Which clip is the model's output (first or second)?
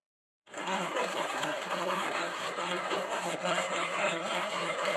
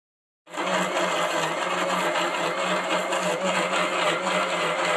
first